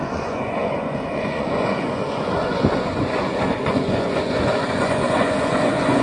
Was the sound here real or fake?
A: fake